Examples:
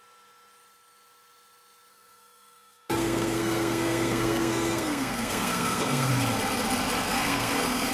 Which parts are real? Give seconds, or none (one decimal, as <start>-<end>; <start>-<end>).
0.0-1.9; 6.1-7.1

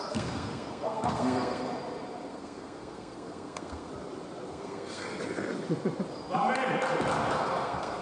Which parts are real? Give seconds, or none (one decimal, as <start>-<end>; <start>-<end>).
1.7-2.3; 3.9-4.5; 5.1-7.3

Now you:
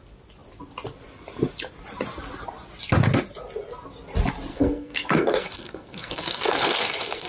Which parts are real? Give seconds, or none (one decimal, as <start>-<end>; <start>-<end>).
0.0-4.5

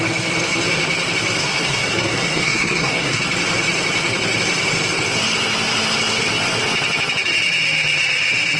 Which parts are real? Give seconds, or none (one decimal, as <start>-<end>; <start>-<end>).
0.0-1.4; 3.2-8.6